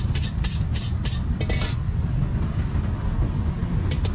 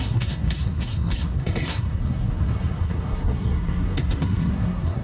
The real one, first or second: first